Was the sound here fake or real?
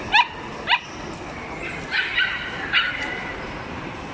fake